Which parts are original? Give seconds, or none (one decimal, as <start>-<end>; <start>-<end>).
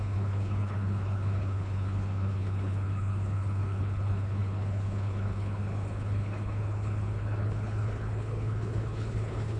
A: none